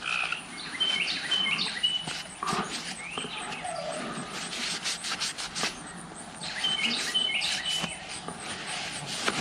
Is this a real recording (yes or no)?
yes